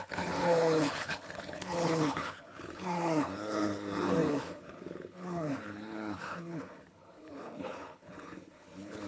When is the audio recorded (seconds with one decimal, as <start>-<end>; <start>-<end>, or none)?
none